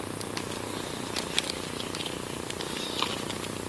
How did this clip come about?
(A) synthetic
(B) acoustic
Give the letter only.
B